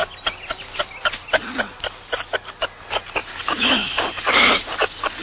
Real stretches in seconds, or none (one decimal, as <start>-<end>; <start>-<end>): 0.0-3.2; 4.0-5.2